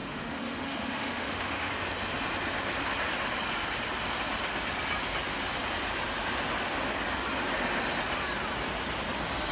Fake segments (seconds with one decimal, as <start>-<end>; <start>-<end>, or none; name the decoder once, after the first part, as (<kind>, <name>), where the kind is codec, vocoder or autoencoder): 0.0-1.7 (autoencoder, DAC-VAE)